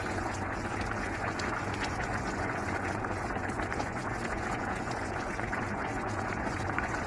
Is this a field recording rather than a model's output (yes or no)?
no